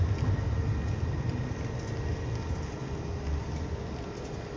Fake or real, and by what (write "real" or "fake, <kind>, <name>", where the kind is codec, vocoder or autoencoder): real